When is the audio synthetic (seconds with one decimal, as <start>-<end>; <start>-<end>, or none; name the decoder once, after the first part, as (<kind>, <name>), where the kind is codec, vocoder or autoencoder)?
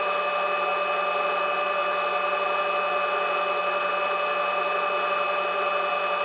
none